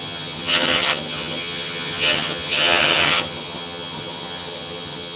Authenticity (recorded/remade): remade